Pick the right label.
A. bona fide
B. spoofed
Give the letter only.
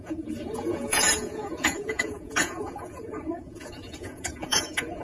B